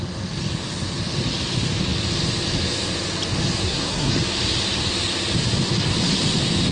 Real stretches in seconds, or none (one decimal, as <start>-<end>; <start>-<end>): 0.0-3.6; 4.1-6.7